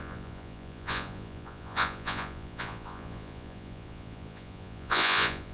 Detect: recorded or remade remade